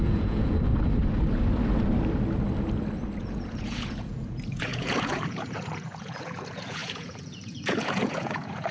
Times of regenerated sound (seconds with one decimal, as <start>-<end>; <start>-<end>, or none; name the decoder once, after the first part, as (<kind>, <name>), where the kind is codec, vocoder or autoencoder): 0.0-0.7 (vocoder, Vocos); 3.2-8.7